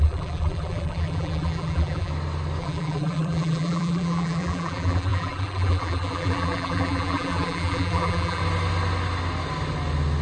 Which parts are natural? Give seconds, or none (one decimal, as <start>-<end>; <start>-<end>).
2.1-2.6; 8.4-10.2